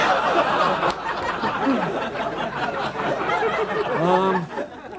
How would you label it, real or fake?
real